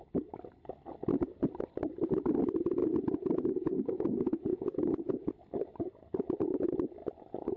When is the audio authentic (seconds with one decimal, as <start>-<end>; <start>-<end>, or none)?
0.0-2.8; 5.3-7.6